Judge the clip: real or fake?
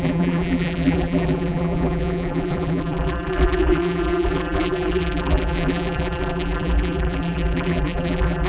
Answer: fake